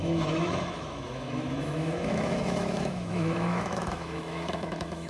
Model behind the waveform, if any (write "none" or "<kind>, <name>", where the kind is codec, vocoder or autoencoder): autoencoder, DAC-VAE